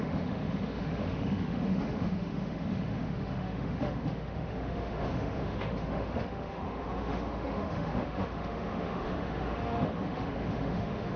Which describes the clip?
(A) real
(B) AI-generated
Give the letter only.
B